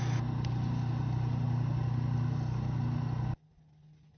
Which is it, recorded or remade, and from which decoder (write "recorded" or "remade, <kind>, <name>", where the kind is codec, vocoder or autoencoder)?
recorded